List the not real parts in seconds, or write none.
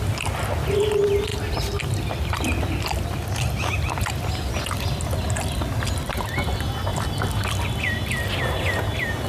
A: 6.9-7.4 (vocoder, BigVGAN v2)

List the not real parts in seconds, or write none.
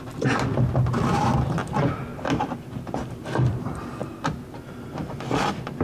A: none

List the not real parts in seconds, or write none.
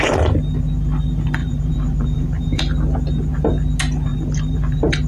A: 1.4-2.6 (vocoder, BigVGAN v2); 4.1-5.1